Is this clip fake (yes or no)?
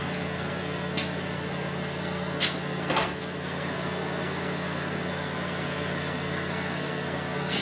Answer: yes